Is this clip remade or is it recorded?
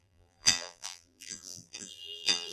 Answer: remade